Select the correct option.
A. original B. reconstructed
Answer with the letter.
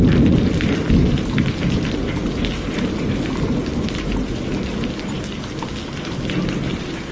A